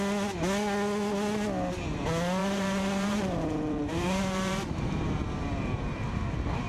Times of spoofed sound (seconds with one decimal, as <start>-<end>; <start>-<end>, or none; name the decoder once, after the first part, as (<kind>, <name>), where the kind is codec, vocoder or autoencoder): 2.4-6.7 (vocoder, BigVGAN v2)